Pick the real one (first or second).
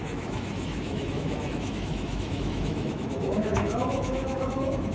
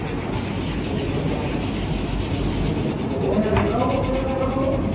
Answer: second